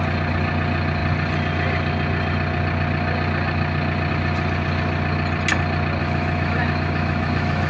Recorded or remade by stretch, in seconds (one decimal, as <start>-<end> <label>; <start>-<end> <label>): 0.0-6.0 recorded; 6.0-7.7 remade